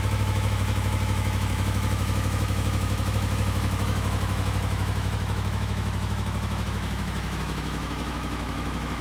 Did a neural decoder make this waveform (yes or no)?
yes